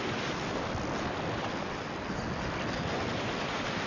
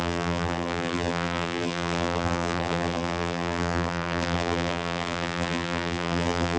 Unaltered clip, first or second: first